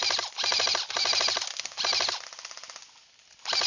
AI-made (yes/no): no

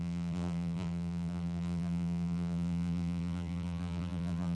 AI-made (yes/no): yes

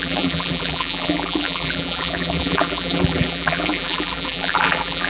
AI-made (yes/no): yes